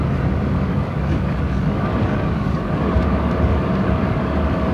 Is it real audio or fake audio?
fake